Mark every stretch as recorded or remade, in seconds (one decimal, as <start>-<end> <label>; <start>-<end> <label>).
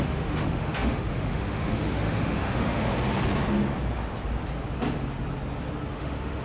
0.0-2.9 remade; 2.9-5.9 recorded; 5.9-6.4 remade